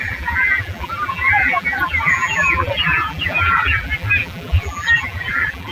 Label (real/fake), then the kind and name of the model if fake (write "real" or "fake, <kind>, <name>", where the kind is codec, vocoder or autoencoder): fake, vocoder, BigVGAN v2